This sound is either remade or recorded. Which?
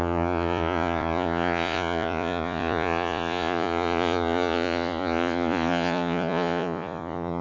remade